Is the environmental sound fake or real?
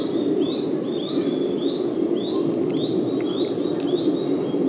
real